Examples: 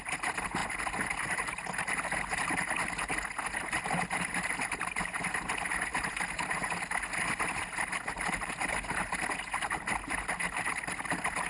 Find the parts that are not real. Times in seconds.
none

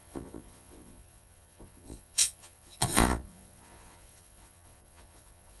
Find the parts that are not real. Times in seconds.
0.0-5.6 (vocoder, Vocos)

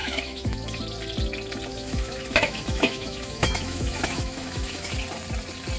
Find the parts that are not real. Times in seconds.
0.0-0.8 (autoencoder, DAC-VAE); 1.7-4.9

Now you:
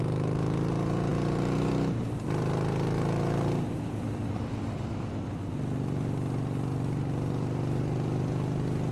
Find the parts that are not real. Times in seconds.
none